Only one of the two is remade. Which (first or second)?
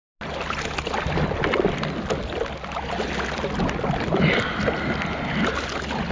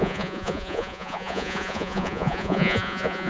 second